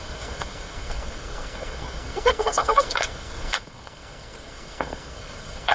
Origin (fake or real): fake